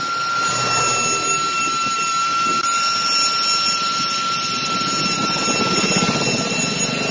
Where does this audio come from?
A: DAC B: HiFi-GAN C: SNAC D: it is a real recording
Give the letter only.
D